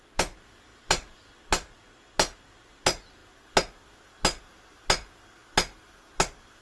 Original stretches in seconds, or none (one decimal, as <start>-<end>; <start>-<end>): 0.0-0.7; 1.2-6.6

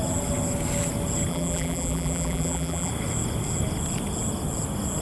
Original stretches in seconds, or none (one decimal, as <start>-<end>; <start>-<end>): 0.0-1.3; 2.9-5.0

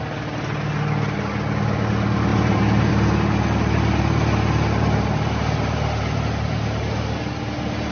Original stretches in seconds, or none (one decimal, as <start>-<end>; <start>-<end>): 0.0-2.3; 2.9-7.9